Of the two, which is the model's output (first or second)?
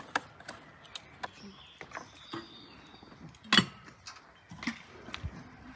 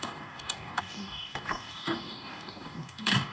second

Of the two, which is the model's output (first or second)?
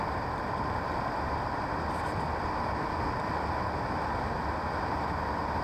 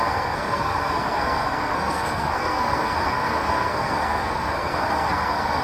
second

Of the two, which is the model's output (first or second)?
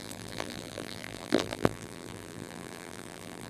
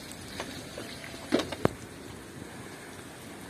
first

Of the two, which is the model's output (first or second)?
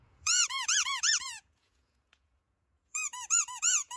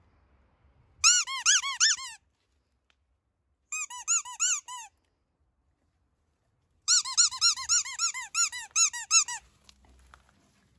first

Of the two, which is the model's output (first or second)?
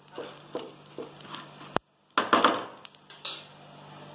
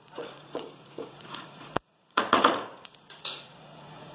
second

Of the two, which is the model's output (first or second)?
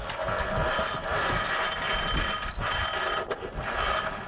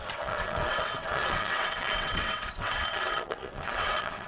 second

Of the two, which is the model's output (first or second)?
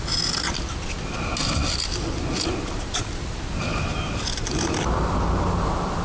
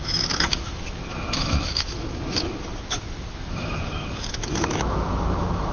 second